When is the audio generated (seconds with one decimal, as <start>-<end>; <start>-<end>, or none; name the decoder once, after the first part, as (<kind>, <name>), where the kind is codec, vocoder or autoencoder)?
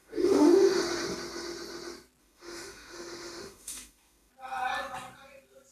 0.0-0.8 (autoencoder, DAC-VAE); 2.2-4.3